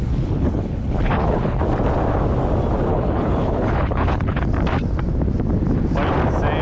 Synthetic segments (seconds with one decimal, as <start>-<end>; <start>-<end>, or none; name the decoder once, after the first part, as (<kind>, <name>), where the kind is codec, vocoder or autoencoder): 0.0-1.6 (codec, HILCodec); 2.9-4.5